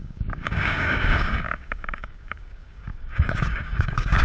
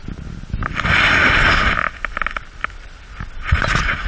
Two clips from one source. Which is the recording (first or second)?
second